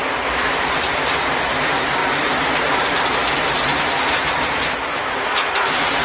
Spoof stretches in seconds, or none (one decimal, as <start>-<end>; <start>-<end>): none